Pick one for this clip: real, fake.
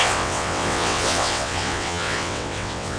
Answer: fake